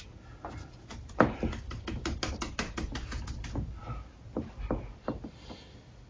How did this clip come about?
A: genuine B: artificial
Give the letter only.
A